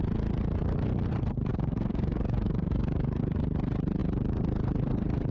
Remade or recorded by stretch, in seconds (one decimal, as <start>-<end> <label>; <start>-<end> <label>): 0.0-1.5 recorded; 1.5-3.2 remade; 3.2-5.3 recorded